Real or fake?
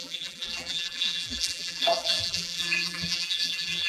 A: fake